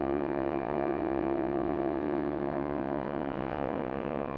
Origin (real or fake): fake